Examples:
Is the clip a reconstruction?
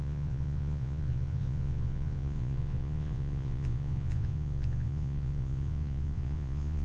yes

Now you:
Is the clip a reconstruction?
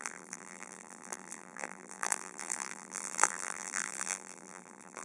yes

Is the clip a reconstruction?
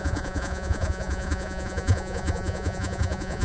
yes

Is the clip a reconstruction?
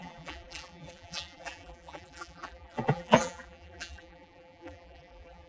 yes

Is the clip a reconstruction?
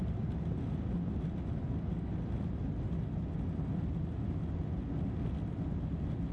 no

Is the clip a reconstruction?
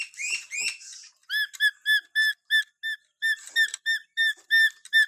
no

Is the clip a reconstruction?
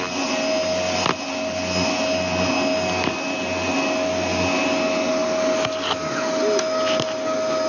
no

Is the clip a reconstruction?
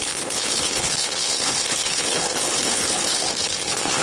yes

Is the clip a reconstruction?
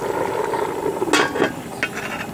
no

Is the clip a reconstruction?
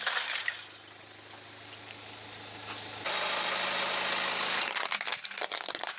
no